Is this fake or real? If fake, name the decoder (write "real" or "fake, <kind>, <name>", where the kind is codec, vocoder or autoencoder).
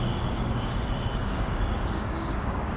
fake, codec, DAC